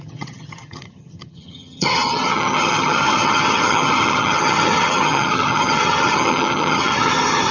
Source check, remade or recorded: remade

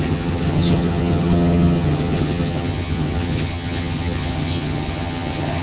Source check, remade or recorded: remade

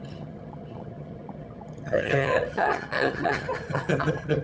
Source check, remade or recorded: remade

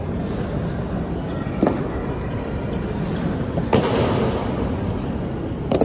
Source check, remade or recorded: recorded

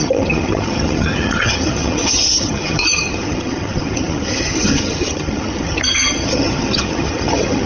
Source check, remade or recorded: remade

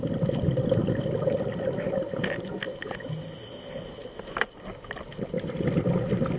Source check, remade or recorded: recorded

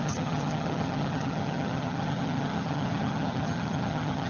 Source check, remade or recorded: remade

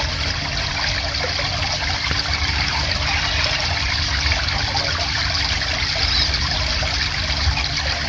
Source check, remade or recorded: recorded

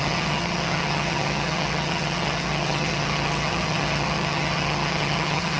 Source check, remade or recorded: remade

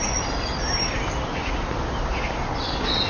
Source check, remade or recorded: recorded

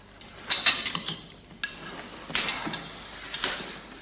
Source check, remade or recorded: recorded